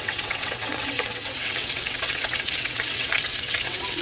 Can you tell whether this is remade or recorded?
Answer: remade